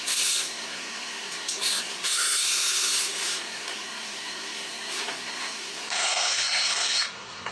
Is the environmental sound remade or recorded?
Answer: remade